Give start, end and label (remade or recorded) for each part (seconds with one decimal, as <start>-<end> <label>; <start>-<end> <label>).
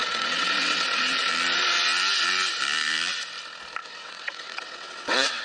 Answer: 0.0-1.3 remade; 1.3-3.8 recorded; 3.8-5.4 remade